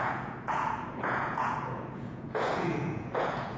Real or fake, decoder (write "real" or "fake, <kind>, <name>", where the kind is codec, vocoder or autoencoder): fake, vocoder, Vocos